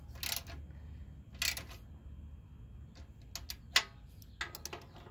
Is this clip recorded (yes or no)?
yes